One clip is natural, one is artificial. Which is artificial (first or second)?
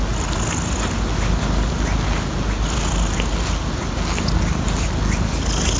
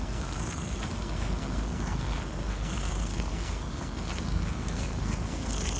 second